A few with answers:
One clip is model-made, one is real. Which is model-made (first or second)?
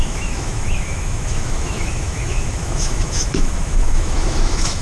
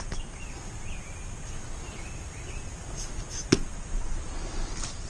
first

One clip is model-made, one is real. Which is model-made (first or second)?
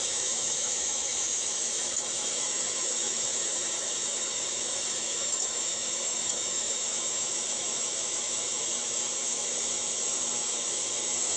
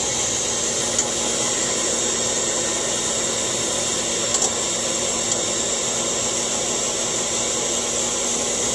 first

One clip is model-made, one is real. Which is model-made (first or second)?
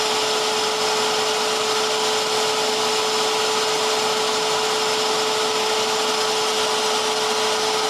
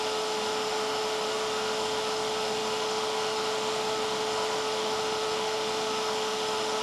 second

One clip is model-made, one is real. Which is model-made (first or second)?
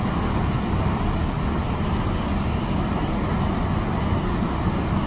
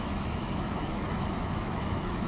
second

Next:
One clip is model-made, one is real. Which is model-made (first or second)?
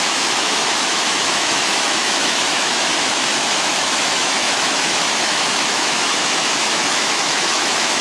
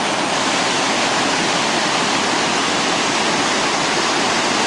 first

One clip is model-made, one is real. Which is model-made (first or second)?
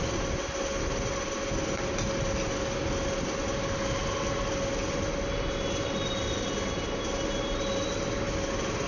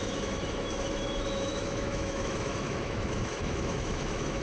second